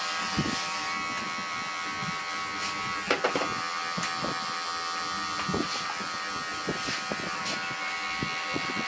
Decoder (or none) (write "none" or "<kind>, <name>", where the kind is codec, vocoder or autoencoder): none